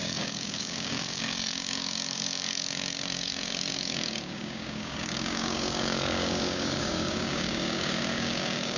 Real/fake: fake